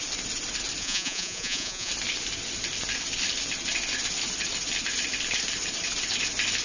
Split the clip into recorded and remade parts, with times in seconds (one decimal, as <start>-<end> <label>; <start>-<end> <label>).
0.0-0.8 recorded; 0.8-1.9 remade; 1.9-6.6 recorded